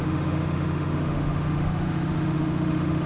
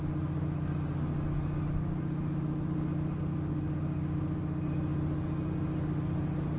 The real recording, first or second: second